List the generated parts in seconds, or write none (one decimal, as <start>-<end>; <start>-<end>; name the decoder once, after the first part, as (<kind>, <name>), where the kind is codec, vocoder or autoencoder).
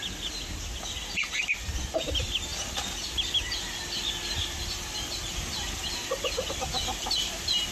none